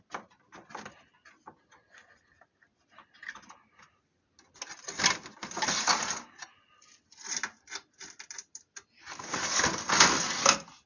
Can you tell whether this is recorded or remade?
recorded